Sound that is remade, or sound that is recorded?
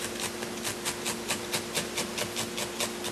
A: recorded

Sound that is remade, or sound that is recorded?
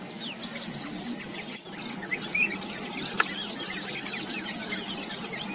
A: recorded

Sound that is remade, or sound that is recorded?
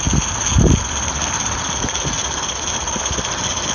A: recorded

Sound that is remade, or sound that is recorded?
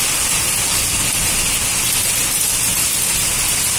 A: recorded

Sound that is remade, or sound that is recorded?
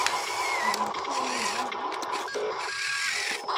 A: recorded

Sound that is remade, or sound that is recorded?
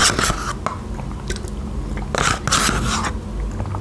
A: recorded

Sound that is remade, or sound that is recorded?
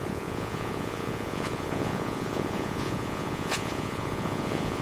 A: remade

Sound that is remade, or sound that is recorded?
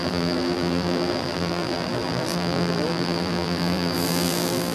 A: remade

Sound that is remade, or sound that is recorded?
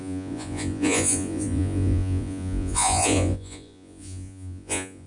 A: remade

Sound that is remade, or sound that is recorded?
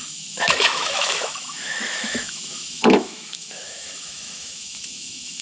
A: remade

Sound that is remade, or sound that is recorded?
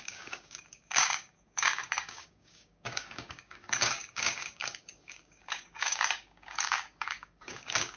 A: remade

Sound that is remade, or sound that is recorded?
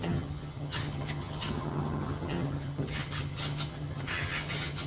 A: remade